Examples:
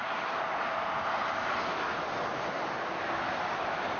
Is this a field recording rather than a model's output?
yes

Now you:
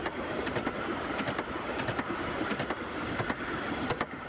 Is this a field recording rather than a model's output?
yes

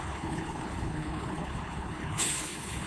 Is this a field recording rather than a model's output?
no